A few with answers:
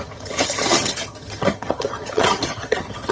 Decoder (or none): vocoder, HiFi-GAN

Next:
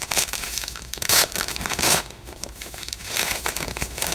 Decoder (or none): autoencoder, DAC-VAE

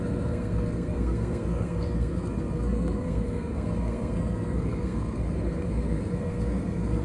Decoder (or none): codec, SNAC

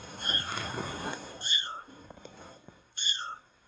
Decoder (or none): codec, SNAC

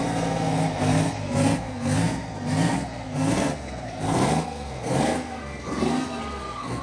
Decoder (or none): codec, SNAC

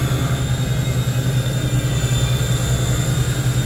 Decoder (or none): none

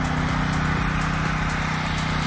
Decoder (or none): none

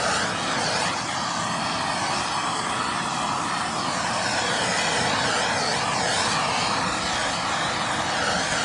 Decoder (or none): none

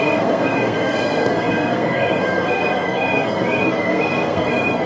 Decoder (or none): codec, SNAC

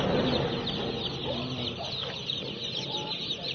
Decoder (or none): none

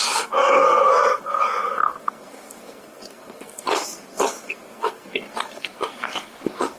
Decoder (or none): codec, SNAC